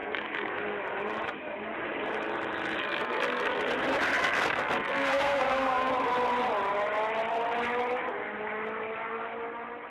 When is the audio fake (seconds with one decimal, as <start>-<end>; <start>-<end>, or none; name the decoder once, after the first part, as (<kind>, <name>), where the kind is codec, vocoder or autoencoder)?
0.0-0.6 (codec, SNAC); 2.8-3.7; 4.2-5.9